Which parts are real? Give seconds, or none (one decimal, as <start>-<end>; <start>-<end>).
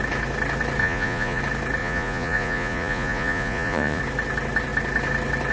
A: 0.0-0.8; 1.4-1.8; 4.0-5.5